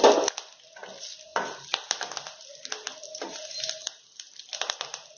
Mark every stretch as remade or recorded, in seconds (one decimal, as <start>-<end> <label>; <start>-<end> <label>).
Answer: 0.0-5.2 recorded